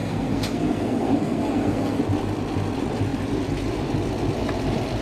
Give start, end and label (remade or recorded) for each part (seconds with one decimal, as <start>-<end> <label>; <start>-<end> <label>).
0.0-2.0 remade; 2.0-5.0 recorded